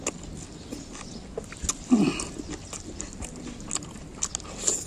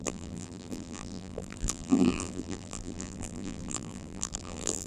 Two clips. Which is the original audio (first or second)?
first